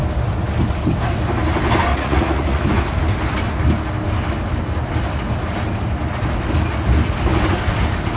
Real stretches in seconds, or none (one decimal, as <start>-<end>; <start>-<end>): 0.0-1.9; 2.6-8.2